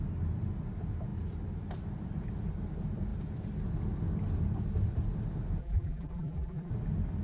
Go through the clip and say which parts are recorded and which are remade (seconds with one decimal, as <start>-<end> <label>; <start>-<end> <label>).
0.0-5.6 recorded; 5.6-6.7 remade; 6.7-7.2 recorded